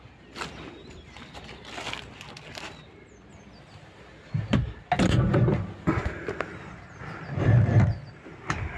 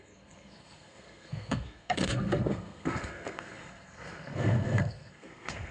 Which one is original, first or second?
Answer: first